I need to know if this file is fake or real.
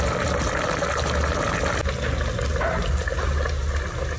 real